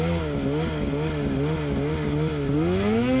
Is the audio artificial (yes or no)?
no